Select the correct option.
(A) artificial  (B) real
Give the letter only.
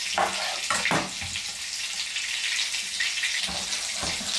B